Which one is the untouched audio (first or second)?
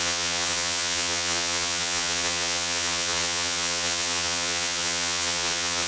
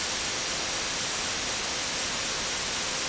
second